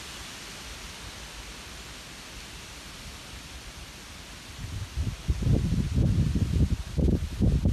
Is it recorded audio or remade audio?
recorded